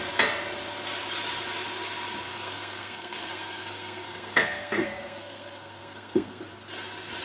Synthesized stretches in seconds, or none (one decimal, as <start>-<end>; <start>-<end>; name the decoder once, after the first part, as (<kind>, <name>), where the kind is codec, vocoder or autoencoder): 2.3-6.4 (codec, SNAC)